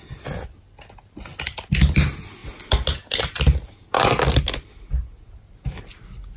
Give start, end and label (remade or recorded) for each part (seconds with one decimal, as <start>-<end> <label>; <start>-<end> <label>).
0.0-6.4 recorded